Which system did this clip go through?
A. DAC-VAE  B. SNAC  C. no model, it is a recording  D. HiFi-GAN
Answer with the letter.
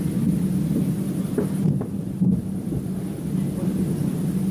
C